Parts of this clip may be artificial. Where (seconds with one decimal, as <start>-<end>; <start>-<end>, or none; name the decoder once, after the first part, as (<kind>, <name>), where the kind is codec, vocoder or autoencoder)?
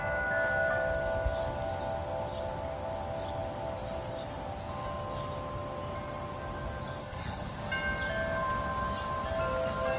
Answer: 7.0-7.6 (codec, HILCodec)